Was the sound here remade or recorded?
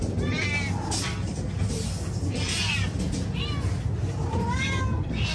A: recorded